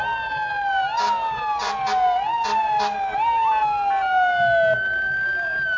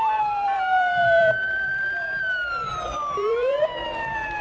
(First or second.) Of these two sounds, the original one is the first